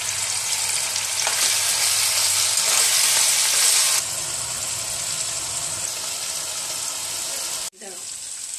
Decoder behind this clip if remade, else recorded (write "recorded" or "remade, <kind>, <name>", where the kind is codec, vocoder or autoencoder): recorded